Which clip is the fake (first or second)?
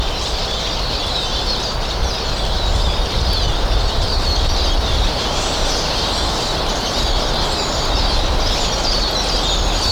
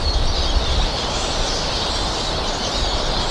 second